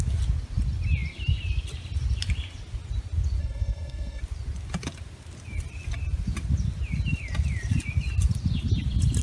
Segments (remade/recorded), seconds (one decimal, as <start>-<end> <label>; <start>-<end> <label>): 0.0-3.4 recorded; 3.4-4.2 remade; 4.2-9.2 recorded